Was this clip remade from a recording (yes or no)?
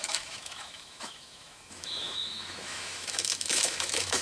yes